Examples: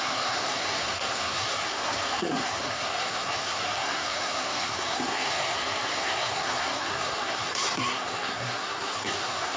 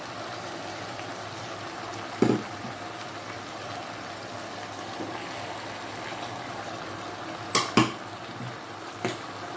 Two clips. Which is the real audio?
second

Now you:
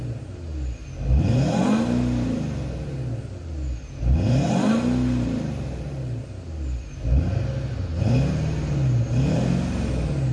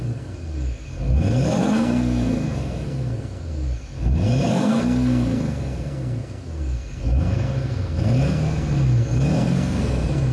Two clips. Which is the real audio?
first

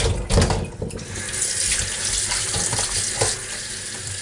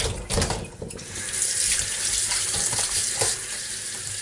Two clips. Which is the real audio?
first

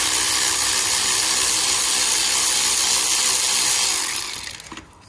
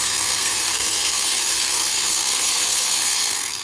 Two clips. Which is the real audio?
first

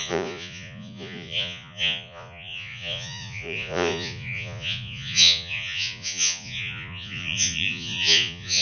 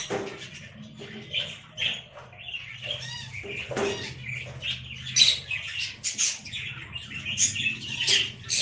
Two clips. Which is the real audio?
second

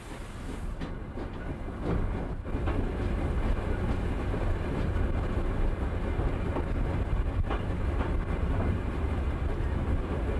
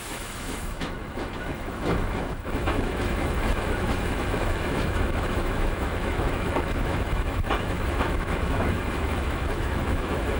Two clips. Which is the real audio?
first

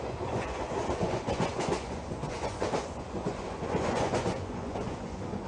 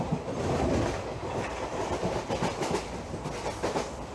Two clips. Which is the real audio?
second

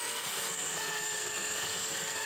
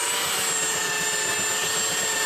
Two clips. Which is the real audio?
second